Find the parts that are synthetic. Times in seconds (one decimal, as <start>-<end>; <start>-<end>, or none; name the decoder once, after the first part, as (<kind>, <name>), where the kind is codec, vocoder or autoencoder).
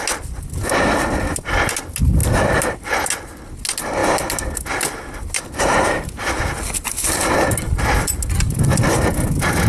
none